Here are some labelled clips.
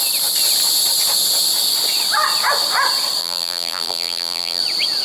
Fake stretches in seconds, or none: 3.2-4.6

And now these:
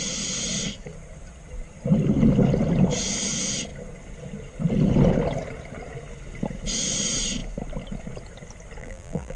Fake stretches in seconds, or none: 8.8-9.4

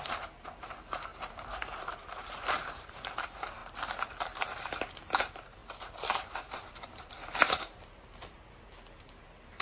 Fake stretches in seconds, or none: 0.0-9.6

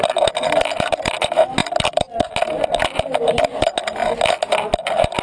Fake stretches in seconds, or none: none

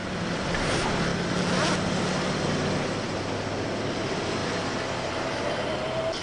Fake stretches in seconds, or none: 0.0-0.7

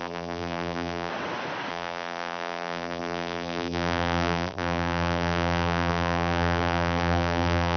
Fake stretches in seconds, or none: 0.0-1.1; 1.7-7.8

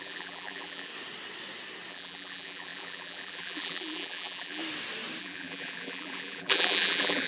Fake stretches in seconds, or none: 0.0-0.9; 1.9-4.6; 5.2-7.3